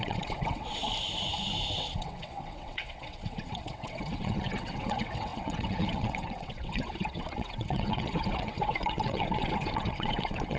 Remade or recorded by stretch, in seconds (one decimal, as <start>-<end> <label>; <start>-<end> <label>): 0.0-0.8 remade; 0.8-1.7 recorded; 1.7-10.6 remade